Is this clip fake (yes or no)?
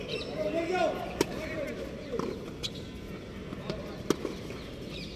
no